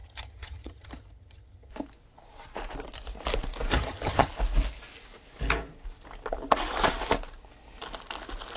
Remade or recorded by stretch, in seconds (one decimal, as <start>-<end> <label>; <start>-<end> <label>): 0.0-1.7 remade; 1.7-3.7 recorded; 3.7-4.3 remade; 4.3-8.6 recorded